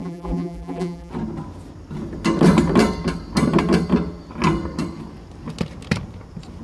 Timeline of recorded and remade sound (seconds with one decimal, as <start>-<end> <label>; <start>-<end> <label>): 0.0-1.1 remade; 1.1-6.6 recorded